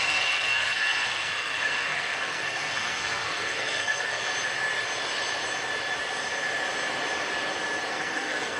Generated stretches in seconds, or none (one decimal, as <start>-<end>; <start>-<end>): 0.0-4.3; 7.9-8.6